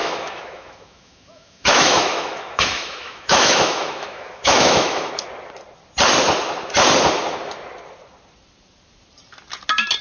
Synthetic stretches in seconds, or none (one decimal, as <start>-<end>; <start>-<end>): 0.0-5.1